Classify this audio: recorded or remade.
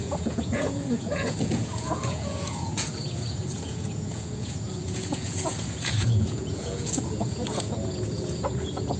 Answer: remade